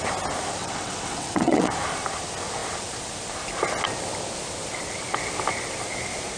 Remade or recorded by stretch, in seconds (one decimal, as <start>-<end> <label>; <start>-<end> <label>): 0.0-0.6 recorded; 0.6-1.7 remade; 1.7-6.4 recorded